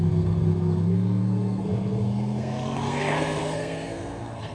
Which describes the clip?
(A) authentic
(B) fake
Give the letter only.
B